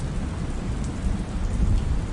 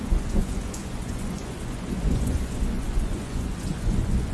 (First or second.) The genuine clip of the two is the first